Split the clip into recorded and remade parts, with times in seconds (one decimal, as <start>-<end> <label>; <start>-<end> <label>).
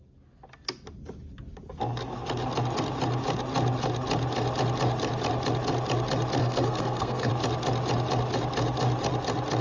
0.0-6.4 recorded; 6.4-7.3 remade; 7.3-9.6 recorded